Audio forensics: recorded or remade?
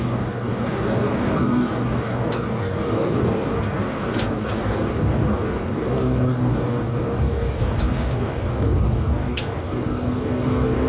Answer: remade